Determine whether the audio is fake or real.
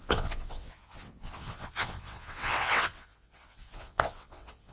fake